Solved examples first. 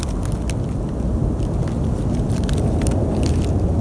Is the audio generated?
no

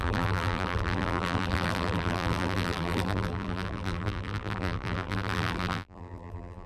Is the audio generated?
yes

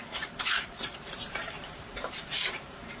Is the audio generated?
yes